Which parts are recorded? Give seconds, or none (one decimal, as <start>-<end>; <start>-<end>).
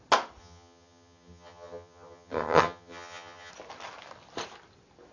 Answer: 0.0-0.4; 3.5-5.1